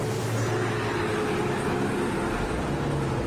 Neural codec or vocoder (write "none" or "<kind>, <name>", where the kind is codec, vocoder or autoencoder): none